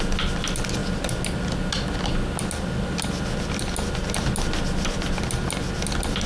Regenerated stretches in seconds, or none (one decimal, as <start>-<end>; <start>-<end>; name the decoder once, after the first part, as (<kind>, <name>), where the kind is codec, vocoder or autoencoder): none